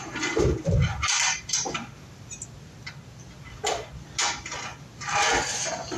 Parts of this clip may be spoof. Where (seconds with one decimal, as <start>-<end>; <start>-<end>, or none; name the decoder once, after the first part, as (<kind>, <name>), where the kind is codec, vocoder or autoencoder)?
0.0-2.3 (vocoder, BigVGAN v2)